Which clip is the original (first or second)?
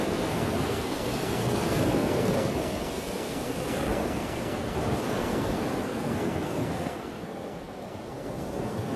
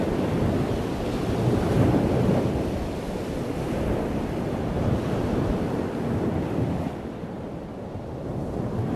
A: second